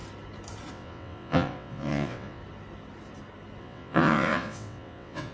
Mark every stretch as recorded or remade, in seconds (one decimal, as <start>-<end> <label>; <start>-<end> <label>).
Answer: 0.0-0.7 recorded; 0.7-2.4 remade; 2.4-3.6 recorded; 3.6-5.3 remade